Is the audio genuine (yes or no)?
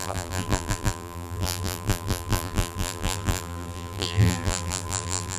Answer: no